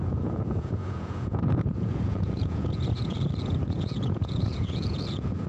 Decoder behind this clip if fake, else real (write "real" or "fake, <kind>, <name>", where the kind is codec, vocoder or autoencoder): fake, vocoder, Vocos